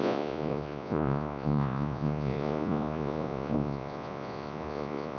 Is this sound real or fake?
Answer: fake